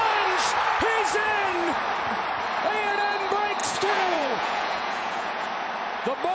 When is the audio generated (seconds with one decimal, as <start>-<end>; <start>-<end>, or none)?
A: 3.6-5.5